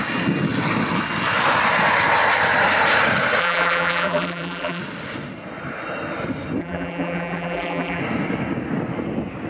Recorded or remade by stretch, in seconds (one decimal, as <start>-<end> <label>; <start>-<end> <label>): 0.0-3.4 recorded; 3.4-4.8 remade; 4.8-6.6 recorded; 6.6-8.0 remade; 8.0-9.5 recorded